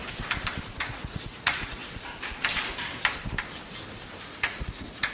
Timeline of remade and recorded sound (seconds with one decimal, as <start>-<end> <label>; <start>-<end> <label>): 0.0-0.8 recorded; 0.8-1.8 remade; 1.8-4.2 recorded; 4.2-5.1 remade